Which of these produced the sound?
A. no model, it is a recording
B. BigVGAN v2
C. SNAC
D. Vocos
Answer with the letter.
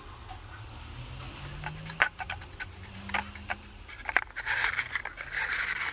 A